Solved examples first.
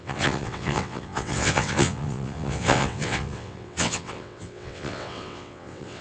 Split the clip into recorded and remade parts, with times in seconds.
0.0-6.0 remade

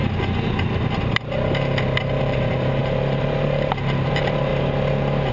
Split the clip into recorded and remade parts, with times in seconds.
0.0-2.2 recorded; 2.2-4.5 remade; 4.5-5.3 recorded

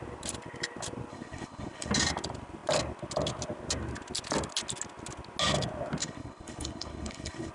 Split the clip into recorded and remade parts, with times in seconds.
0.0-1.1 recorded; 1.1-1.9 remade; 1.9-6.0 recorded; 6.0-7.5 remade

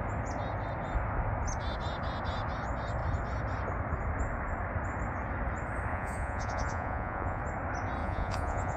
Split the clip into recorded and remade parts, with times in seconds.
0.0-5.9 recorded; 5.9-7.4 remade; 7.4-8.0 recorded; 8.0-8.8 remade

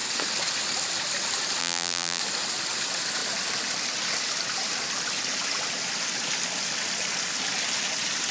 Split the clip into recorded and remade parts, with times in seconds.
0.0-1.6 recorded; 1.6-2.2 remade; 2.2-8.3 recorded

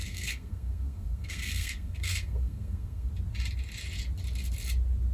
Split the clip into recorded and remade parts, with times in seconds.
0.0-3.1 remade; 3.1-5.1 recorded